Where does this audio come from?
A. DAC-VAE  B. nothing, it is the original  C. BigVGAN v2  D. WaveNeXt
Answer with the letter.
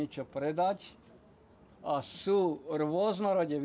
B